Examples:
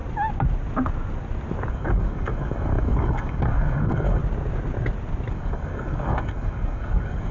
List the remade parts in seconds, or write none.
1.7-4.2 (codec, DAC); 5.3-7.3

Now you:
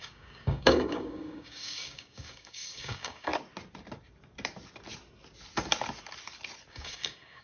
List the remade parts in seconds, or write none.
0.0-3.3 (codec, DAC); 6.7-7.4

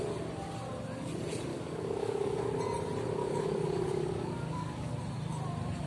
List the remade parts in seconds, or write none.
1.5-2.5 (codec, DAC); 3.2-4.9

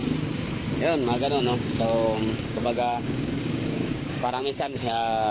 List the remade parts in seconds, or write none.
1.4-5.3 (codec, DAC)

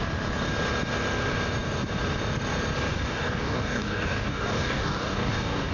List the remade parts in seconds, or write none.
2.9-5.7 (codec, DAC)

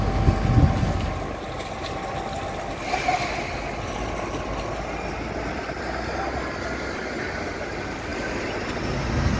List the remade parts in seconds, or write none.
none